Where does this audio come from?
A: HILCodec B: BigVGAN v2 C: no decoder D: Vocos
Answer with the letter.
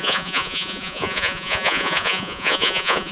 D